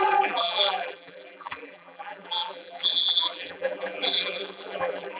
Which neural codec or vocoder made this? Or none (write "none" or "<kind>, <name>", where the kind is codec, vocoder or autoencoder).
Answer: vocoder, BigVGAN v2